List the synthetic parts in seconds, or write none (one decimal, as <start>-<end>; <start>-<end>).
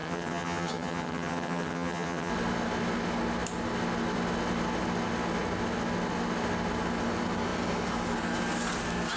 0.0-2.3